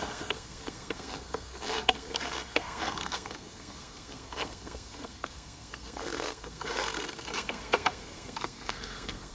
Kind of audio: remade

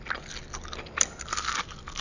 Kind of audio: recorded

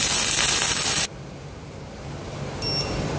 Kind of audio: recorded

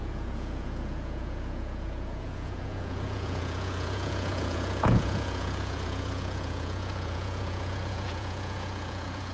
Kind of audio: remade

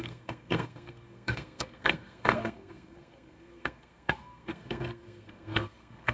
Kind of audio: remade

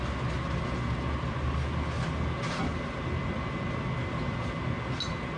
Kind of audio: recorded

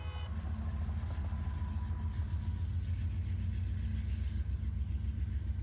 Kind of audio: recorded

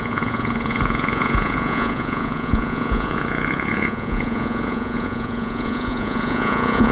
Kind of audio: remade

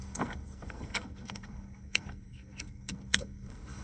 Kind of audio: remade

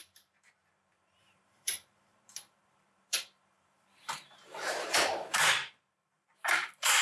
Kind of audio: remade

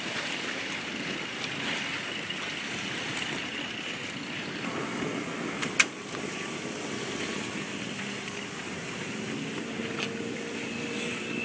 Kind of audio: recorded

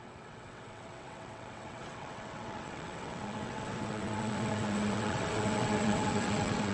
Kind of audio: remade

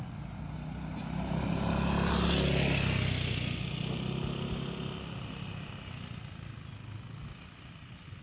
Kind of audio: recorded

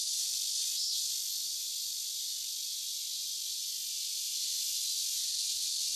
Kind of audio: recorded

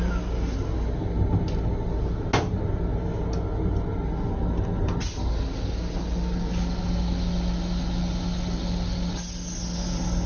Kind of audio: recorded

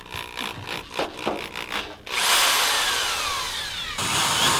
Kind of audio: recorded